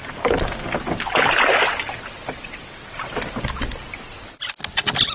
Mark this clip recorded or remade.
recorded